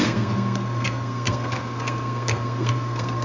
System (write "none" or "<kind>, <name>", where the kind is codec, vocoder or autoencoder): codec, SNAC